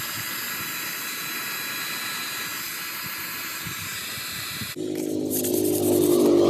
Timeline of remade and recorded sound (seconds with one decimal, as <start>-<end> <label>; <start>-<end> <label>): 0.0-6.5 recorded